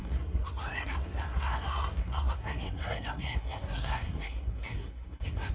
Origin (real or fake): fake